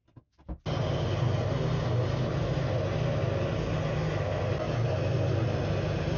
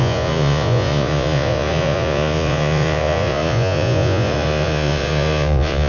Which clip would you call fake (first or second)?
second